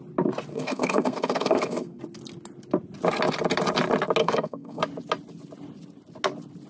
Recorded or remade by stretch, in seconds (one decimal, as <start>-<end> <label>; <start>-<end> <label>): 0.0-0.5 recorded; 0.5-2.0 remade; 2.0-4.2 recorded; 4.2-4.8 remade; 4.8-6.7 recorded